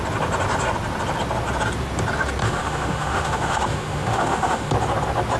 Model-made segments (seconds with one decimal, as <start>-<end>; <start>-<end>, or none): 2.4-4.7